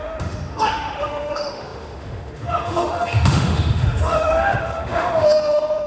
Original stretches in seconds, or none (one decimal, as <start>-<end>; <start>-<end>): none

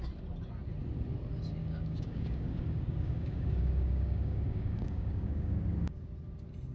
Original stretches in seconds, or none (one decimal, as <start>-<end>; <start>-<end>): 0.0-1.6; 5.6-6.7

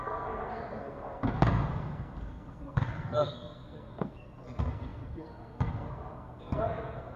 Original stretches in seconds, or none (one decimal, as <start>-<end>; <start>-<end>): none

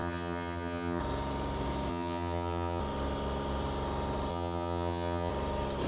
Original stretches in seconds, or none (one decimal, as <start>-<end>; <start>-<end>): 1.0-1.9; 2.8-4.3; 5.3-5.9

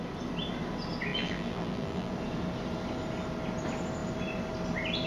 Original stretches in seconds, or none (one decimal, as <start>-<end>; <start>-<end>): 0.0-1.1; 2.1-5.1